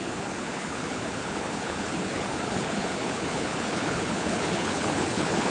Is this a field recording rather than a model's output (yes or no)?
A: no